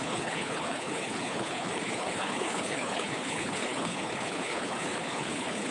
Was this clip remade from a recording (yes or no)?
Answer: yes